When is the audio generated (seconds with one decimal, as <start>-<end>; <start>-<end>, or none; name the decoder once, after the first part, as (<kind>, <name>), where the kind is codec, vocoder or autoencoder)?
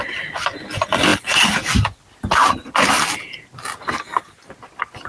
none